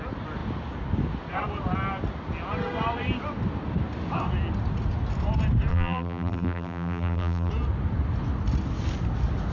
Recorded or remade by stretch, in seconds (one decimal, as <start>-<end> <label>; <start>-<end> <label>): 0.0-5.7 recorded; 5.7-7.5 remade; 7.5-9.5 recorded